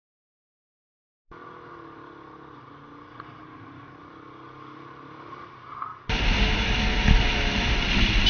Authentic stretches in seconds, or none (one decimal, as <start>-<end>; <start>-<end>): 0.0-8.3